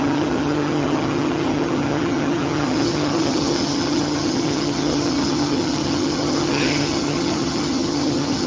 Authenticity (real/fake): fake